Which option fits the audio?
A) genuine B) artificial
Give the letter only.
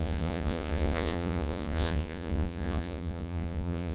B